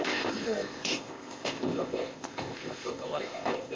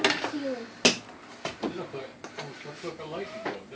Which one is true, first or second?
second